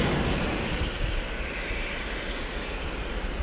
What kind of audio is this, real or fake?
real